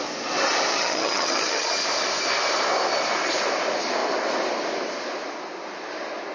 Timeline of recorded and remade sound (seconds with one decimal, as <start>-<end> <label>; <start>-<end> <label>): 0.0-0.7 recorded; 0.7-1.7 remade; 1.7-6.3 recorded